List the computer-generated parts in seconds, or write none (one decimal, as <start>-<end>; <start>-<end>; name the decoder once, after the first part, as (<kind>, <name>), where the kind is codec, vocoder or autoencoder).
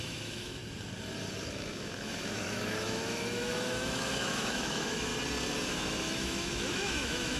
0.0-0.6 (autoencoder, DAC-VAE); 1.5-5.1; 5.7-7.4